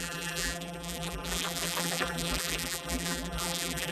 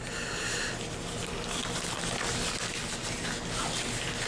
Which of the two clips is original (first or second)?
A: second